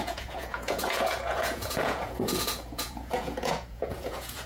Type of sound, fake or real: fake